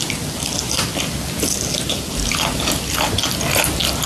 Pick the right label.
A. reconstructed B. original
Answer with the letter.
B